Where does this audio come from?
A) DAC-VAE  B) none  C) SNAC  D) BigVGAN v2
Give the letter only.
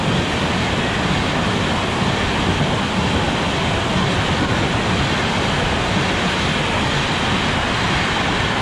B